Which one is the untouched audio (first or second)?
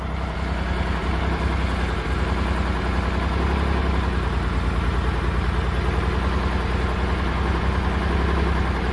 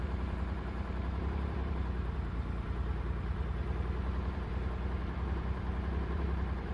first